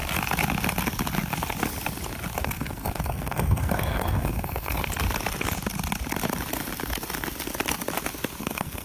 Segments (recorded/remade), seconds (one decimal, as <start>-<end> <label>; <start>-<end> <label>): 0.0-2.4 recorded; 2.4-4.8 remade; 4.8-8.4 recorded; 8.4-8.8 remade